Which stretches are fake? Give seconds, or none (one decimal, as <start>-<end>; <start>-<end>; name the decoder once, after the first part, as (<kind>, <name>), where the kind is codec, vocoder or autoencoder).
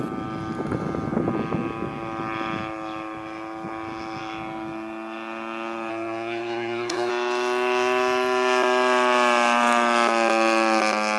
5.9-7.1 (codec, SNAC)